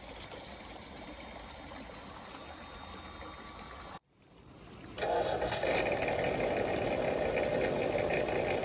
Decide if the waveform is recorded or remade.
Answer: recorded